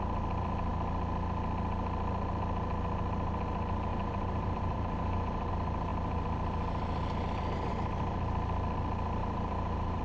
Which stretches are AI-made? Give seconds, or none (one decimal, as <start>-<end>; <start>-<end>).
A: 3.9-5.5; 9.2-10.0